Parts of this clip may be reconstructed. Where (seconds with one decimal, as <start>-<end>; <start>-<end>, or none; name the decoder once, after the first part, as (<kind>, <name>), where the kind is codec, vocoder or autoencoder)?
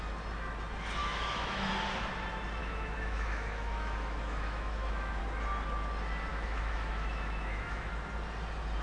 1.0-1.7 (autoencoder, DAC-VAE); 2.6-5.2; 6.3-7.9